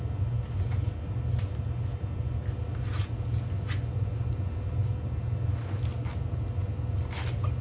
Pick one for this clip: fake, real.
real